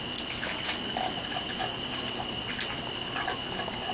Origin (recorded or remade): recorded